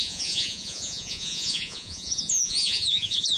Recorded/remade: remade